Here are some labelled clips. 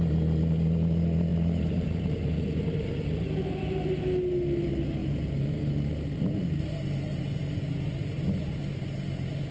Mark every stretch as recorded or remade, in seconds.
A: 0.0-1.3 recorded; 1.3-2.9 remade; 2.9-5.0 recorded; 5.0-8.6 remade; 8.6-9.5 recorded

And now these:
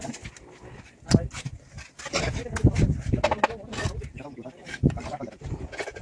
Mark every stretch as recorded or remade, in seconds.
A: 0.0-4.8 recorded; 4.8-5.6 remade; 5.6-6.0 recorded

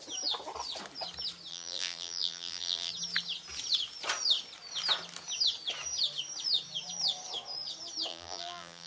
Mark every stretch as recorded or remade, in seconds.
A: 0.0-1.5 recorded; 1.5-2.9 remade; 2.9-8.1 recorded; 8.1-8.9 remade

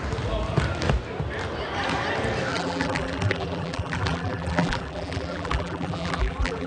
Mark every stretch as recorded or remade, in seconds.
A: 0.0-2.5 recorded; 2.5-6.7 remade

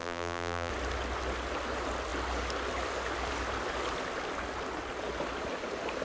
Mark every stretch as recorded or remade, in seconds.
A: 0.0-0.7 remade; 0.7-6.0 recorded

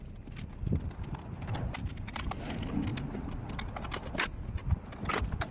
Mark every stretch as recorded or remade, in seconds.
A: 0.0-1.8 recorded; 1.8-2.4 remade; 2.4-5.5 recorded

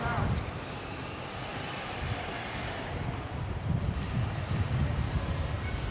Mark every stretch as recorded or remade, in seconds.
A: 0.0-1.5 recorded; 1.5-3.8 remade; 3.8-5.9 recorded

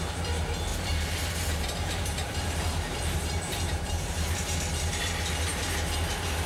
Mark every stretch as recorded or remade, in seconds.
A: 0.0-0.7 recorded; 0.7-4.6 remade; 4.6-6.5 recorded